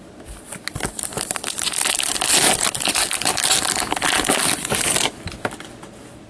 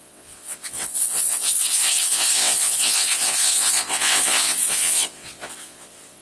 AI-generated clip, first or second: second